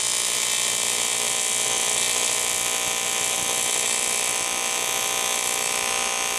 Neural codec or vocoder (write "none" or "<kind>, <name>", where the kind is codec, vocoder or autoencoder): none